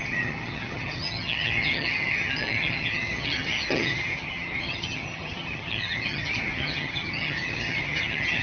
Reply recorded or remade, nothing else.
remade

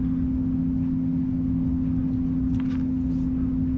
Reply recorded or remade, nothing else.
recorded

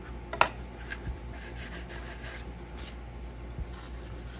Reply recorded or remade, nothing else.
recorded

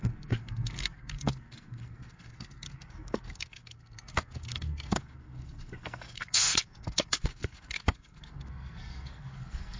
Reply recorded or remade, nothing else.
remade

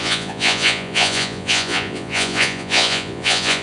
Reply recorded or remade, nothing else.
remade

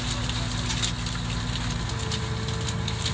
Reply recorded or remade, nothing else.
recorded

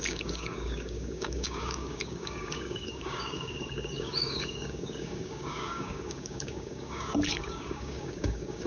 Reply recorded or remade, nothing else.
remade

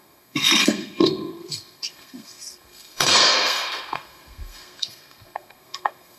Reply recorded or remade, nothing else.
remade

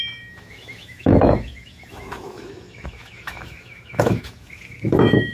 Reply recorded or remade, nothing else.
remade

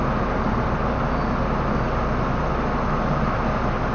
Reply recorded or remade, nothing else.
recorded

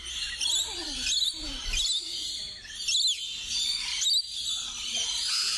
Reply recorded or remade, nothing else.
recorded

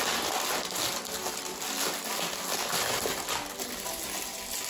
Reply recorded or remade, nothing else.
recorded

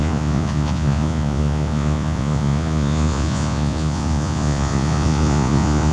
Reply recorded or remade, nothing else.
remade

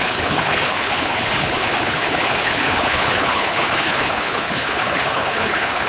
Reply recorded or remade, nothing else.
remade